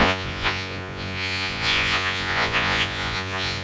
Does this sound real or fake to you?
fake